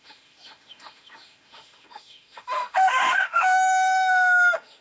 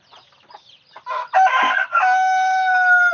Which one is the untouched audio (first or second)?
second